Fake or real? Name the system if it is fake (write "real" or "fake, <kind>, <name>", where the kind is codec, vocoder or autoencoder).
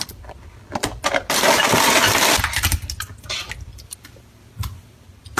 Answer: fake, vocoder, BigVGAN v2